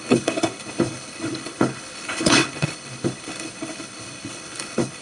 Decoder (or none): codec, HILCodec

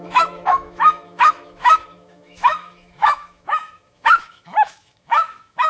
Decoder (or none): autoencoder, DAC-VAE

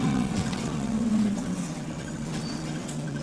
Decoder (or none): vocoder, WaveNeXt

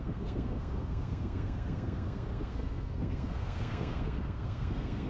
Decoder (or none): codec, SNAC